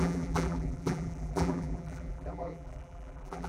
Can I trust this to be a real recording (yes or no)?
no